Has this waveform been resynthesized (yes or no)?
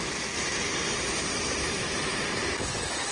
yes